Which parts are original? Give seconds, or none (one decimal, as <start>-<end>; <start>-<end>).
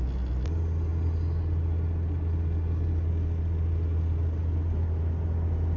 0.0-5.8